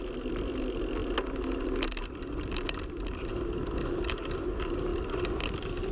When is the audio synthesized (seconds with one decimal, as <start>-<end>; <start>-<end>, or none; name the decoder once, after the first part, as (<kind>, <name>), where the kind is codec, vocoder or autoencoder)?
none